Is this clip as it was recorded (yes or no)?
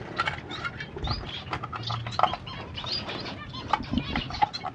yes